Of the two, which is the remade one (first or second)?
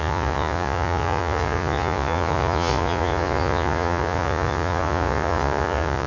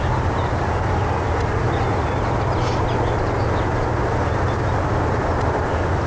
first